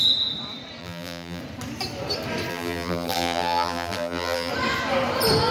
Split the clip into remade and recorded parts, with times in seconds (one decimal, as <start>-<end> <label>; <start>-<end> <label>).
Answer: 0.0-0.8 recorded; 0.8-1.4 remade; 1.4-2.5 recorded; 2.5-4.5 remade; 4.5-5.5 recorded